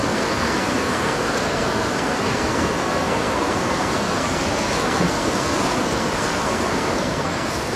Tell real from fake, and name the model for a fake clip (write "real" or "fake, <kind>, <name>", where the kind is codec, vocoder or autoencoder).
fake, codec, SNAC